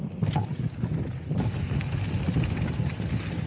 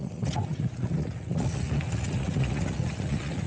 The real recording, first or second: first